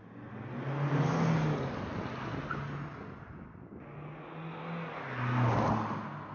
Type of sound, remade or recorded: recorded